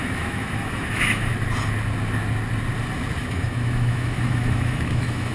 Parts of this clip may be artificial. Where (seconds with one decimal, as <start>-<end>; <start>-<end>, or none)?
0.0-1.3; 3.2-5.3